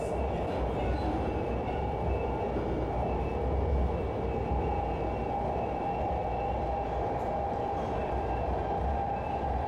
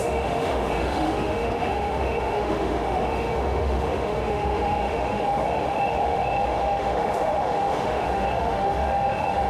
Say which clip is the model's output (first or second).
second